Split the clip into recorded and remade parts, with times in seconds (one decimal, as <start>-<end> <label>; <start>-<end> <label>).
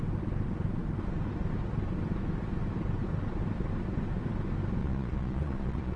0.0-4.8 recorded; 4.8-6.0 remade